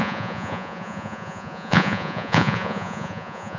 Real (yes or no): no